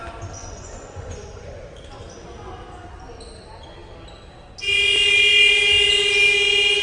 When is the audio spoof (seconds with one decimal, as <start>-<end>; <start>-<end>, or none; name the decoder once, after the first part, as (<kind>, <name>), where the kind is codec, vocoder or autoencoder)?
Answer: 0.4-1.6 (vocoder, Vocos)